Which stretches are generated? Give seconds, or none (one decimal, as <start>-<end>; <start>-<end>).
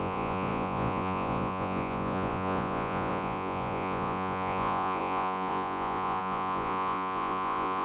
0.0-7.8